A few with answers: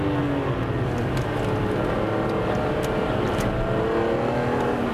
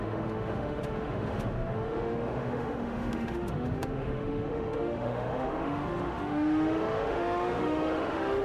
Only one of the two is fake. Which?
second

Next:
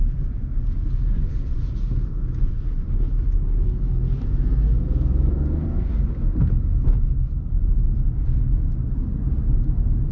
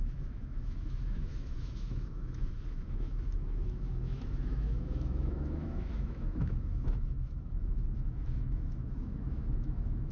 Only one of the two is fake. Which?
second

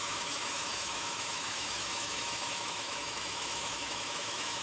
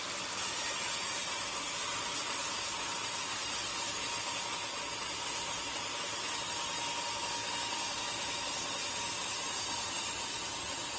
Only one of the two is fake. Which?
first